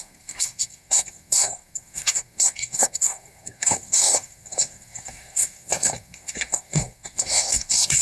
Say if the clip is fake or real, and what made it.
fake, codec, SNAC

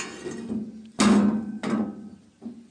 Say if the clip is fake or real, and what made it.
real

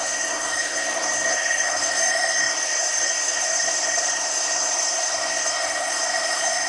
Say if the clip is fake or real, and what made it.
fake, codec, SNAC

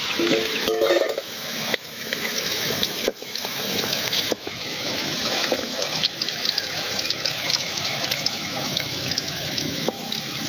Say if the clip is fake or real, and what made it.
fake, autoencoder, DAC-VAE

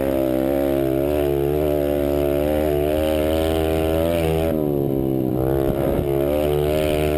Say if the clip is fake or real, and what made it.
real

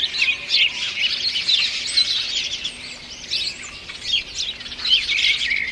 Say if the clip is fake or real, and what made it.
real